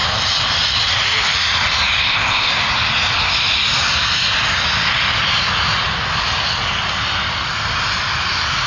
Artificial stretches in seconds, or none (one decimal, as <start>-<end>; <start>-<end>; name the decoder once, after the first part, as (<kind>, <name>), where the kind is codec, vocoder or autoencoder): 2.0-2.5 (codec, ZipCodec)